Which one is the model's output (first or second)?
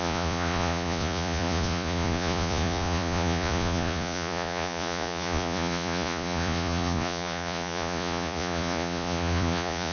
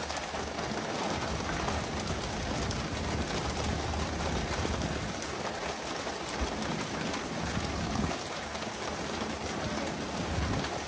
first